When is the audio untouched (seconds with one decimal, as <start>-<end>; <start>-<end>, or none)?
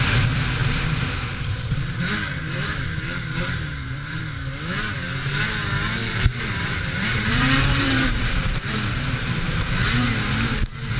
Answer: 0.0-0.6; 4.2-6.0; 9.7-11.0